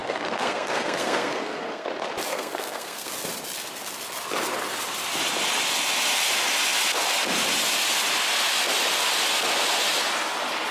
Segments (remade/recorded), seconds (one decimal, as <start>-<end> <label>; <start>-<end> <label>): 0.0-1.9 remade; 1.9-2.3 recorded; 2.3-3.1 remade; 3.1-10.7 recorded